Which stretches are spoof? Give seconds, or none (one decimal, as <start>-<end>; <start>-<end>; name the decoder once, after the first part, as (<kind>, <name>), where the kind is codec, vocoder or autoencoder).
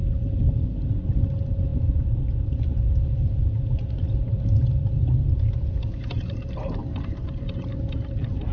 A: none